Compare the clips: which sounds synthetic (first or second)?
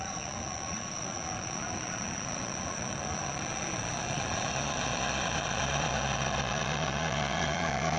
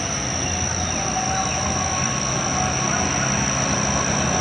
first